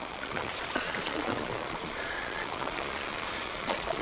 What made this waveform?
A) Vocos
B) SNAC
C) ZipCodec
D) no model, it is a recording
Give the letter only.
A